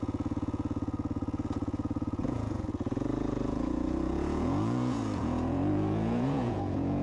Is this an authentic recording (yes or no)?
no